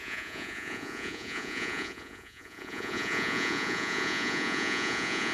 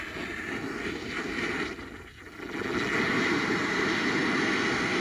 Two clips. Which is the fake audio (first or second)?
first